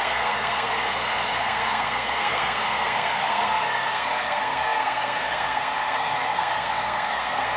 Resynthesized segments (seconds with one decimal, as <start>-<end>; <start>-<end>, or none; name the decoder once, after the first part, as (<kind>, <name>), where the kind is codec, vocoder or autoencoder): 0.0-7.6 (codec, SNAC)